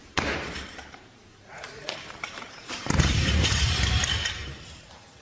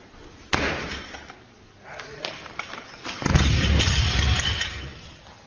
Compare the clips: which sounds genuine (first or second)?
second